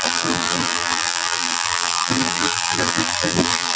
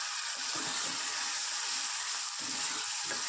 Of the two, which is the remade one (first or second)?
first